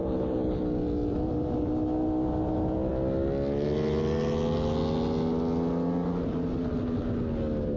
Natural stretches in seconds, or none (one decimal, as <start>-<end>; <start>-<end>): 0.6-7.8